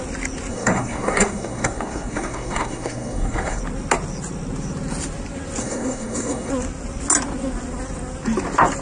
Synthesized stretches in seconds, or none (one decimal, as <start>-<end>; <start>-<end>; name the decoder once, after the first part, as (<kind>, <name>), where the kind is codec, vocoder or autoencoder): 0.5-3.6 (codec, SNAC); 5.6-6.5